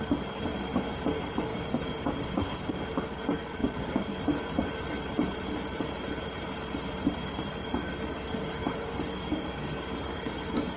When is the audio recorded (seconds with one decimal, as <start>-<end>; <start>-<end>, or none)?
0.0-1.5; 2.7-7.6; 10.4-10.8